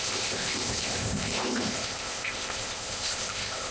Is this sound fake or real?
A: fake